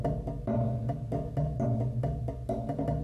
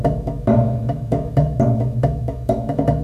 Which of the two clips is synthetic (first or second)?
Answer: second